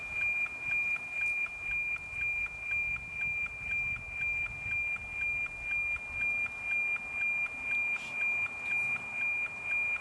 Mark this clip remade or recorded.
recorded